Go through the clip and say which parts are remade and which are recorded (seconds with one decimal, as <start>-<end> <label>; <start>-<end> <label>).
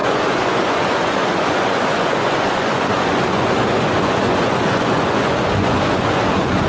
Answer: 0.0-6.7 remade